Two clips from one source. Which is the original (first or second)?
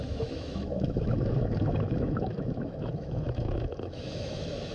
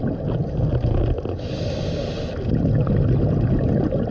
second